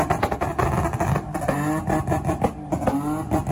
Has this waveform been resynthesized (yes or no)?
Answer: no